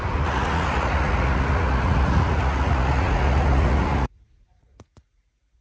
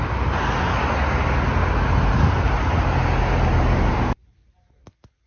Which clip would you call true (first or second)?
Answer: second